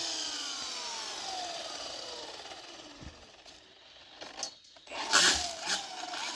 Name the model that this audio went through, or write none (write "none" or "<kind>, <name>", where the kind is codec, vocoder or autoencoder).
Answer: none